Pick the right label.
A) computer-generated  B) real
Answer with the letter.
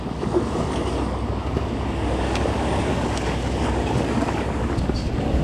A